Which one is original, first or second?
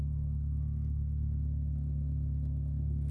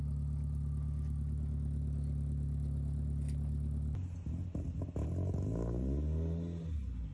second